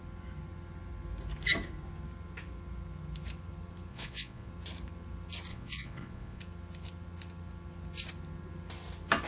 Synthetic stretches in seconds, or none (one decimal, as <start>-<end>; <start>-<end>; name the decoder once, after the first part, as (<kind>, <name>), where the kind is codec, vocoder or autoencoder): 3.9-4.5 (vocoder, Vocos); 5.5-6.4